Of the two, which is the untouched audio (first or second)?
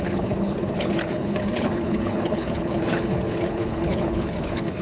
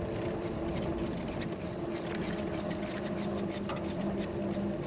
second